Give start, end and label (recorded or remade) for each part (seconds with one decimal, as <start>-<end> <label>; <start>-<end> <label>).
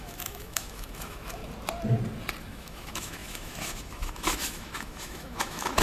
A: 0.0-1.4 remade; 1.4-2.4 recorded; 2.4-5.8 remade